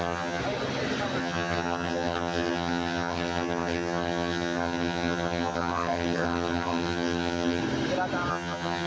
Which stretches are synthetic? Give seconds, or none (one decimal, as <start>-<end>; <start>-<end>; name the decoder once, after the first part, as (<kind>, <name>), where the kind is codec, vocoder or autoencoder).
0.0-0.4 (vocoder, HiFi-GAN); 1.2-7.6; 8.3-8.9